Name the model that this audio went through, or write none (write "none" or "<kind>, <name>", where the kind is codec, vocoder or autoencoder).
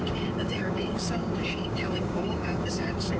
codec, DAC